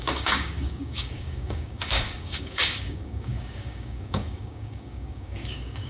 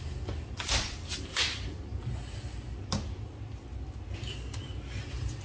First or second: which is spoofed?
first